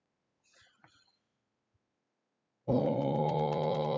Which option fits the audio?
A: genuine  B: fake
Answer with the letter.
B